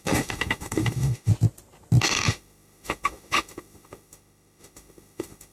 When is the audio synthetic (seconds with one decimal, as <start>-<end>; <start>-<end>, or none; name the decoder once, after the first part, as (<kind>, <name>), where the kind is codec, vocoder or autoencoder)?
0.0-1.3 (autoencoder, DAC-VAE); 2.0-5.5